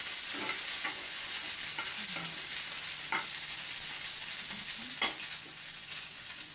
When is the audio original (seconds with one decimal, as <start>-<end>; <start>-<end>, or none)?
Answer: 0.0-0.7; 1.4-5.2